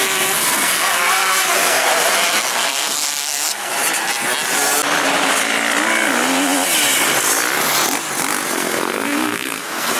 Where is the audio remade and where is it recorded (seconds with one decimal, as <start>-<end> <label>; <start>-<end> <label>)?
0.0-1.9 remade; 1.9-2.5 recorded; 2.5-3.7 remade; 3.7-8.5 recorded; 8.5-10.0 remade